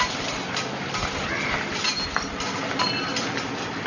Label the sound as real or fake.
real